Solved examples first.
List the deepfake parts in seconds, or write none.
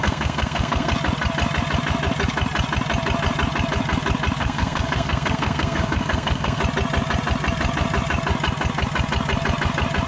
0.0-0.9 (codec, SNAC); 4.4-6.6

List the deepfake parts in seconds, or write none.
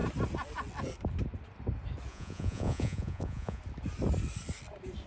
2.1-3.6 (vocoder, Vocos)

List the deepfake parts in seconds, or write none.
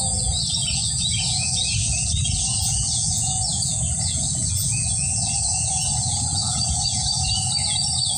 0.0-8.2 (vocoder, Vocos)